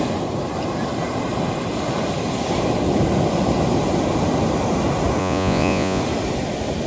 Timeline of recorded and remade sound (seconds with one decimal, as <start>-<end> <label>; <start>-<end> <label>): 0.0-5.2 recorded; 5.2-6.0 remade; 6.0-6.9 recorded